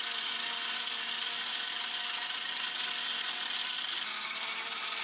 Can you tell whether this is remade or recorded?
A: recorded